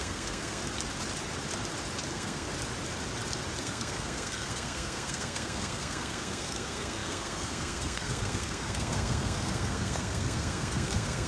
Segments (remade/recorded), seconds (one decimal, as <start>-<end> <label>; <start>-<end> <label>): 0.0-0.6 remade; 0.6-2.1 recorded; 2.1-2.5 remade; 2.5-3.6 recorded; 3.6-11.3 remade